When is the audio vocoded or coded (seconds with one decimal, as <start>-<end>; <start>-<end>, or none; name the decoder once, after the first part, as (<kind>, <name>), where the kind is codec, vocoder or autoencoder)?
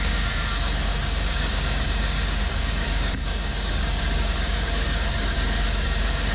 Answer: 0.0-6.3 (codec, DAC)